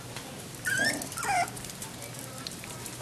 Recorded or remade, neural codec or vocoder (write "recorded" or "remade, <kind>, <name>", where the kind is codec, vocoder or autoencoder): recorded